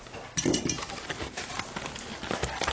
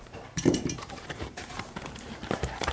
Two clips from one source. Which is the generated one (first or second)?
second